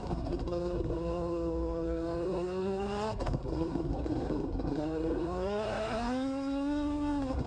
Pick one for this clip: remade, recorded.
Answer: remade